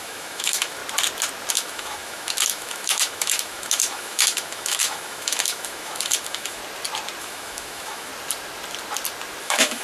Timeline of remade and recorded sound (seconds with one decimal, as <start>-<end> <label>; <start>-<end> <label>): 0.0-0.8 remade; 0.8-1.5 recorded; 1.5-6.6 remade; 6.6-7.2 recorded; 7.2-8.1 remade; 8.1-9.4 recorded; 9.4-9.8 remade